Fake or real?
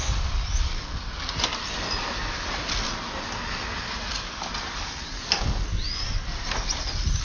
real